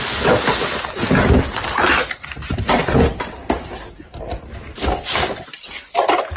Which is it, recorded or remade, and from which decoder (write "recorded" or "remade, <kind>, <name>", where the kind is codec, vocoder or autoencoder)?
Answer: recorded